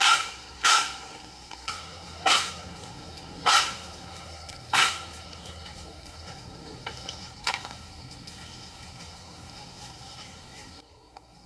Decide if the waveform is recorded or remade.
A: remade